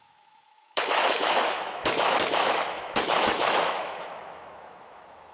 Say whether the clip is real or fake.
fake